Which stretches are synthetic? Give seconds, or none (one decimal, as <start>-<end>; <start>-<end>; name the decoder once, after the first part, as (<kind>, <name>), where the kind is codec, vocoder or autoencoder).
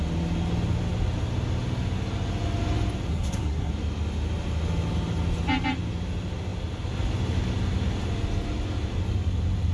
3.1-3.7 (codec, SNAC)